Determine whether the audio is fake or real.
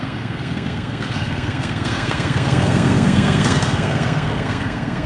fake